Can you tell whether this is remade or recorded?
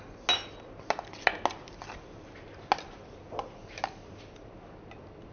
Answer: recorded